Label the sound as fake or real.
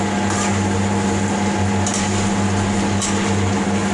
real